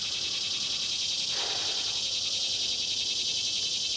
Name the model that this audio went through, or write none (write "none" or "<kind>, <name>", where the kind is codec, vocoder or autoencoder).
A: none